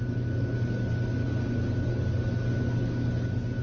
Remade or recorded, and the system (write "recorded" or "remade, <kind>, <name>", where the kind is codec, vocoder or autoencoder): recorded